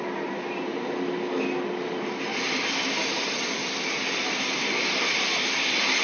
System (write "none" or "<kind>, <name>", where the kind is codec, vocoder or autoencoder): none